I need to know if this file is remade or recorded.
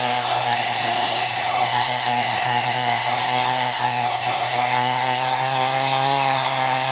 remade